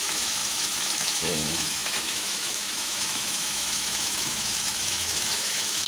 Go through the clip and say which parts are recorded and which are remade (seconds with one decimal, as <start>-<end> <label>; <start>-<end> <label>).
0.0-5.9 remade